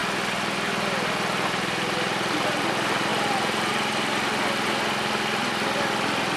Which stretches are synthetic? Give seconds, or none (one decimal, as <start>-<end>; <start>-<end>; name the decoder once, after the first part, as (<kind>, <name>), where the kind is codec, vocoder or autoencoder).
3.1-3.7 (vocoder, BigVGAN v2)